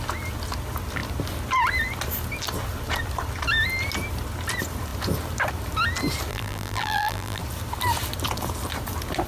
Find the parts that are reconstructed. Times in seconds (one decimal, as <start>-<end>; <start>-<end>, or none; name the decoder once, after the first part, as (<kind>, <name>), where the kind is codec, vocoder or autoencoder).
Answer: 6.3-7.4 (vocoder, BigVGAN v2)